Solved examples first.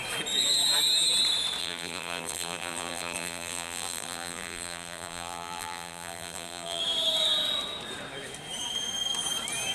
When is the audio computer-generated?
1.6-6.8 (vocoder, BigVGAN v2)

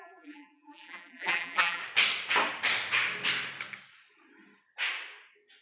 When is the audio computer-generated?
0.0-1.8 (vocoder, BigVGAN v2)

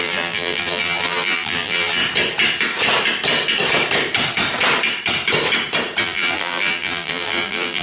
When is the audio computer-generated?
0.0-2.0 (vocoder, BigVGAN v2); 6.0-7.8

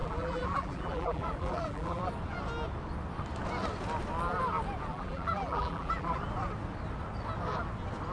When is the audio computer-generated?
0.0-2.0 (vocoder, BigVGAN v2); 4.9-6.2

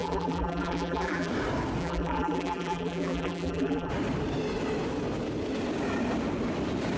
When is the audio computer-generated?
0.0-1.3 (vocoder, BigVGAN v2); 1.8-3.9

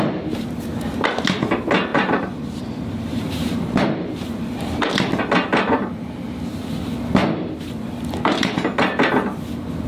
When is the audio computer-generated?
1.9-4.9 (vocoder, BigVGAN v2)

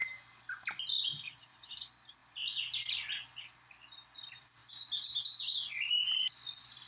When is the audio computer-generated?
1.0-2.2 (vocoder, BigVGAN v2); 3.4-4.6; 5.2-6.9